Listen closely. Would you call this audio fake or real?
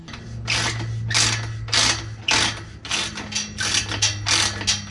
real